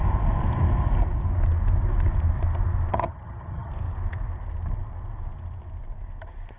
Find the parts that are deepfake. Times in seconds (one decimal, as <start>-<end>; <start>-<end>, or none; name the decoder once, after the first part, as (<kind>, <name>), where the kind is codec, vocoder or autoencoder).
2.9-3.7 (vocoder, HiFi-GAN)